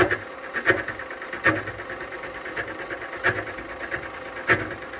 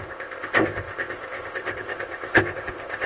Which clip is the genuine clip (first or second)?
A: first